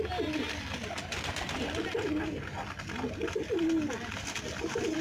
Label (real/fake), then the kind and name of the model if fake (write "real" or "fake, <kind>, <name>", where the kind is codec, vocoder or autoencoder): real